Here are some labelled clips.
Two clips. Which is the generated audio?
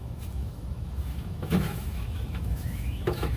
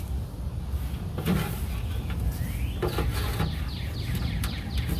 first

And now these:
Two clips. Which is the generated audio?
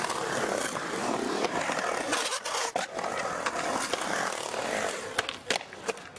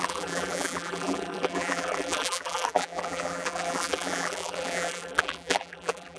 second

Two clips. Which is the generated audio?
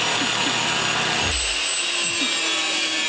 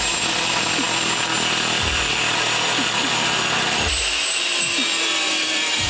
second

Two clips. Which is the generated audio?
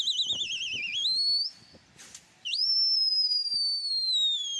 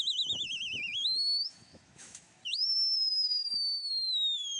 second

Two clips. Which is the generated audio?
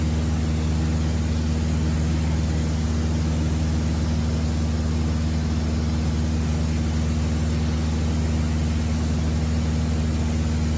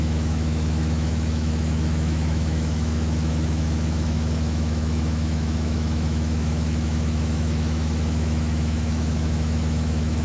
second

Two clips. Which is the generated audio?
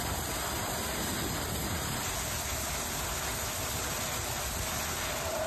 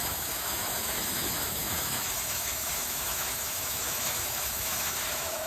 second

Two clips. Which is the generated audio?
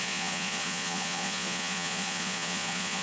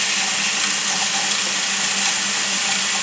first